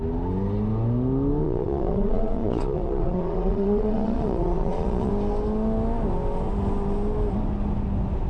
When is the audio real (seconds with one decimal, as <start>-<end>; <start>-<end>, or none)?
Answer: 0.0-1.4; 5.1-8.3